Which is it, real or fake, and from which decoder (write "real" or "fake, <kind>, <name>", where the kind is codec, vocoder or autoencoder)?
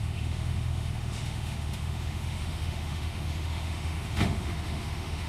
fake, autoencoder, DAC-VAE